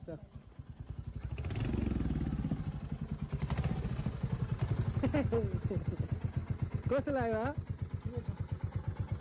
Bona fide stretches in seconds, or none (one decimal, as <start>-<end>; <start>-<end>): 0.0-9.2